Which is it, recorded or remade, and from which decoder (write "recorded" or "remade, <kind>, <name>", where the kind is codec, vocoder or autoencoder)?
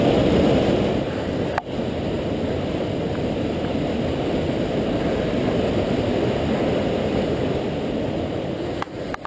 recorded